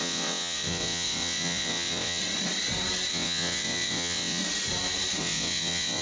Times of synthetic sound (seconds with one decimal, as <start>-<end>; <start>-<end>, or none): 0.0-2.2; 3.1-4.4; 5.2-6.0